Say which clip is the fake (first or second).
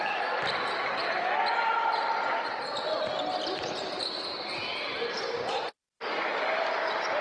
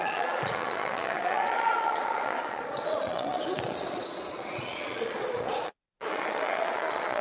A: second